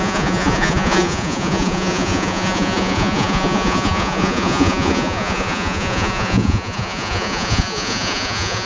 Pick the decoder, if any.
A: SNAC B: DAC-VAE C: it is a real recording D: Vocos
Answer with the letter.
D